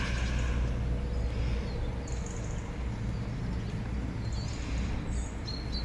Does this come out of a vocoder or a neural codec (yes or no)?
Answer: no